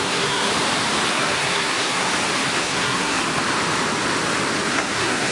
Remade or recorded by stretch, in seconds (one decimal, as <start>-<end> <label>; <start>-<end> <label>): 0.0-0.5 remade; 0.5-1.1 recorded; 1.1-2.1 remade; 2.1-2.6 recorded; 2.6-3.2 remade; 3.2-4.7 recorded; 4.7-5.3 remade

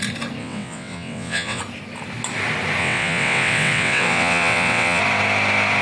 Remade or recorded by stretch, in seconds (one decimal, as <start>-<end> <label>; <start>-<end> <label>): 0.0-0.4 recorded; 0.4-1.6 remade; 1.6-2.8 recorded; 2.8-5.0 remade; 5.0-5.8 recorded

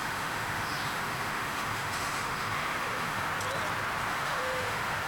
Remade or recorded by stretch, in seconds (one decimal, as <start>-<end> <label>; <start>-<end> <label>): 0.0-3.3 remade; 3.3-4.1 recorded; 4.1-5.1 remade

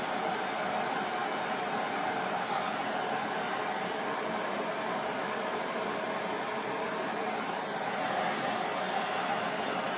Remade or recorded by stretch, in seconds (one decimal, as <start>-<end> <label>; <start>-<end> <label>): 0.0-10.0 recorded